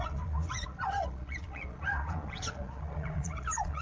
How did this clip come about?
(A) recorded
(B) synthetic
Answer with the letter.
B